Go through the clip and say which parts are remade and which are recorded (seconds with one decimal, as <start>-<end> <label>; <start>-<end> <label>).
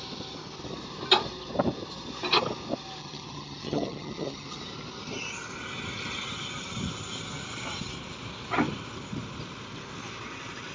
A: 0.0-3.0 recorded; 3.0-4.6 remade; 4.6-10.7 recorded